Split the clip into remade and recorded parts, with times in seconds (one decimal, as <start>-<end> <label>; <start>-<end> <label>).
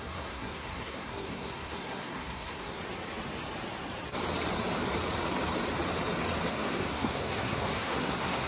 0.0-2.8 remade; 2.8-6.5 recorded; 6.5-8.5 remade